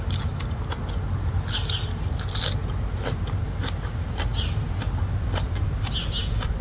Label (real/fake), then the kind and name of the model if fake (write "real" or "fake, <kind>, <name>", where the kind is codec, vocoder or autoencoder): real